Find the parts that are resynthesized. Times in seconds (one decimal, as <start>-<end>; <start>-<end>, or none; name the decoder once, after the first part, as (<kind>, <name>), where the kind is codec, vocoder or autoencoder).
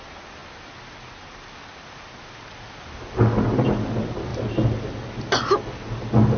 none